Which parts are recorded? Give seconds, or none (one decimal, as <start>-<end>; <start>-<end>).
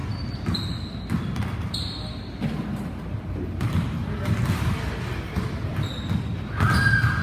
0.0-2.7; 5.8-7.2